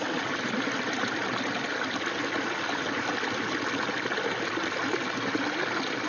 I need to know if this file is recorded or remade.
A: recorded